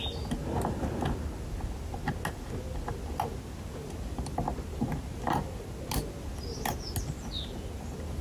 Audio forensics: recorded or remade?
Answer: recorded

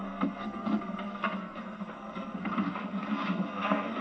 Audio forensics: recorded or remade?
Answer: remade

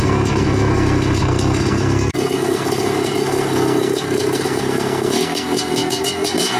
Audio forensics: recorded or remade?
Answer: remade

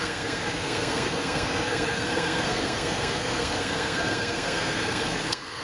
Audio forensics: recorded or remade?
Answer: remade